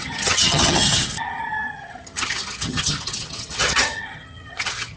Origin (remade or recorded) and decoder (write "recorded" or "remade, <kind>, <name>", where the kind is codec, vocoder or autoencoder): remade, vocoder, HiFi-GAN